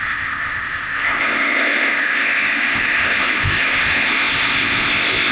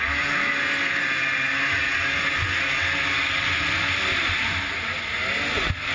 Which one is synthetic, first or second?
first